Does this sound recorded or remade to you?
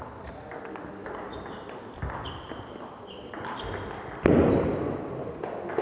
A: recorded